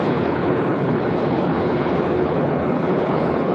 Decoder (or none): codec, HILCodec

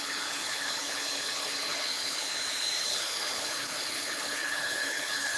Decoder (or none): codec, HILCodec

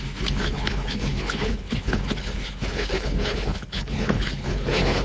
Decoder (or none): codec, HILCodec